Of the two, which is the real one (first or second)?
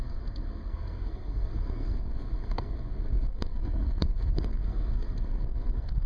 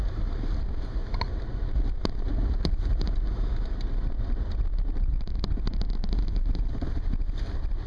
second